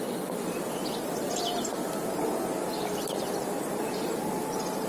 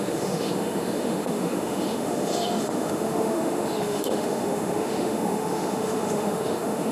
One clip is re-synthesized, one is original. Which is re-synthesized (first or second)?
second